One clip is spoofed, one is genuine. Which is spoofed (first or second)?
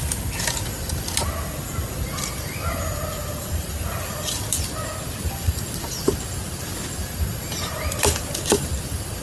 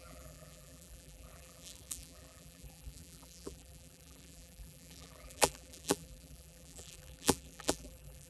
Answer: second